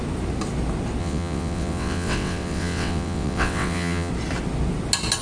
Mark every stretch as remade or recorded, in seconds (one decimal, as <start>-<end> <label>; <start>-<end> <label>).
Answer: 0.0-1.0 recorded; 1.0-4.1 remade; 4.1-5.2 recorded